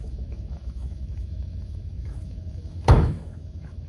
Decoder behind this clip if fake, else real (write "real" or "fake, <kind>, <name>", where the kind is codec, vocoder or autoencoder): fake, autoencoder, DAC-VAE